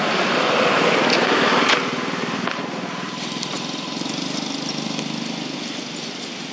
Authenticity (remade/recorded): recorded